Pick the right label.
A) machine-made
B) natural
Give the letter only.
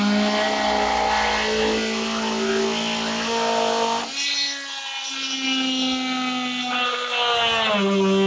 B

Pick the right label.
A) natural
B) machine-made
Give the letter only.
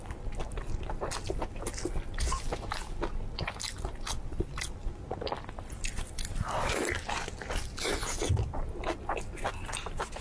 A